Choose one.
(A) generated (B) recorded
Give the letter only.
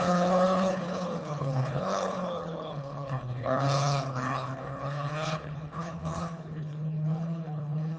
A